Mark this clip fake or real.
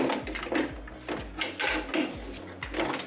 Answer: real